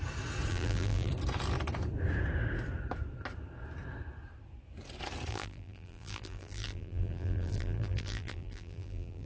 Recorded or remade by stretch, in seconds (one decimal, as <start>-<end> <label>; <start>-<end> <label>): 0.0-0.5 recorded; 0.5-1.1 remade; 1.1-5.3 recorded; 5.3-9.3 remade